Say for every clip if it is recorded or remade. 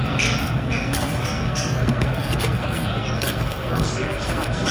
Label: remade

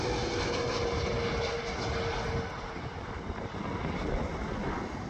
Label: recorded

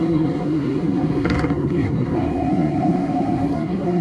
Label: remade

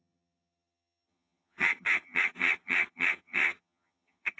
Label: remade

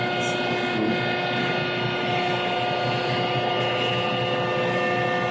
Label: recorded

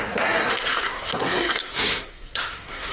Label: remade